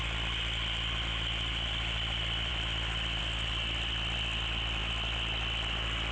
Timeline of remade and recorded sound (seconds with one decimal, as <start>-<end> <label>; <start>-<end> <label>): 0.0-6.1 recorded